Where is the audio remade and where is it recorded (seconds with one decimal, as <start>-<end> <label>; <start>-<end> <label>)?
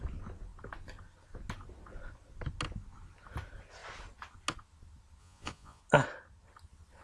0.0-5.2 recorded; 5.2-5.8 remade; 5.8-7.0 recorded